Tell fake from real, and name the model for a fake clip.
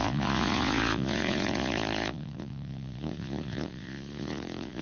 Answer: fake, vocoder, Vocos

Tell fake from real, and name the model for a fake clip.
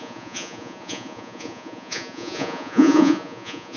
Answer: fake, vocoder, Vocos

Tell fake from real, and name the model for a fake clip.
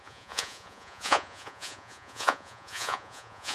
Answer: fake, vocoder, Vocos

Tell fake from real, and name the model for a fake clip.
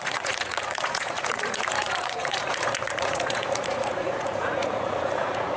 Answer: fake, vocoder, Vocos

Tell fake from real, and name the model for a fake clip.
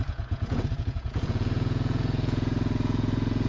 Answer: fake, vocoder, Vocos